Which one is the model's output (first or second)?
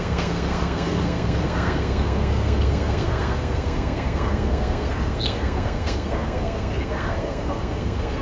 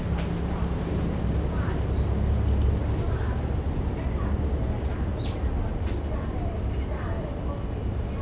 first